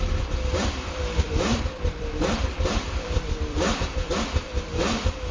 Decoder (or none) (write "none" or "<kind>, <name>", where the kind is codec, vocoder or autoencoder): vocoder, BigVGAN v2